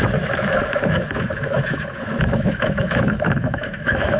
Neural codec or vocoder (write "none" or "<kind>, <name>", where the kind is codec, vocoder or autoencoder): autoencoder, DAC-VAE